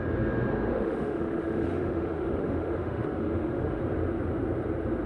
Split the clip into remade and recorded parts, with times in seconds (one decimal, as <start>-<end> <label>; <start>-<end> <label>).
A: 0.0-0.7 recorded; 0.7-3.8 remade; 3.8-5.1 recorded